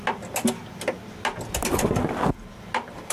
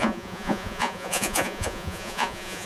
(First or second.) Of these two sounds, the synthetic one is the second